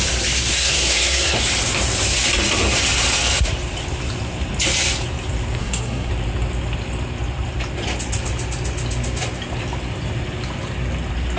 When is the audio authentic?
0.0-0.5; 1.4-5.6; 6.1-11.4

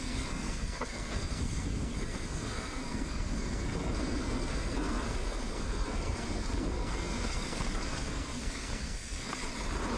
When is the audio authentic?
9.3-10.0

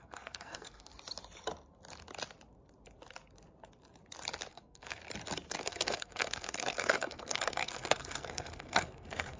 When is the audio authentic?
0.9-4.5; 5.0-5.6

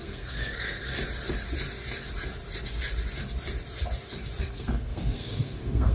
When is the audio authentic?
0.9-4.4